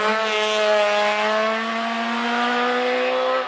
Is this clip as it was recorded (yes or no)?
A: yes